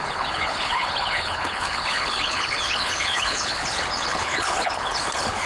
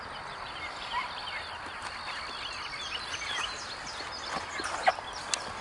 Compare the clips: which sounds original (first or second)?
second